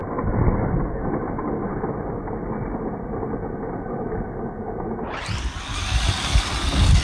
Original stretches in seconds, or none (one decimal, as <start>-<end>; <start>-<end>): 0.0-7.0